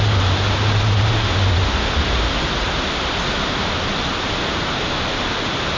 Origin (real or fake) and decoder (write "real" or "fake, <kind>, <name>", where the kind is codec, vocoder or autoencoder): real